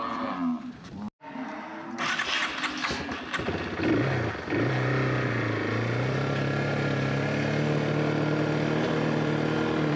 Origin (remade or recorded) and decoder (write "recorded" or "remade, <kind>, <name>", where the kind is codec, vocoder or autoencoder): recorded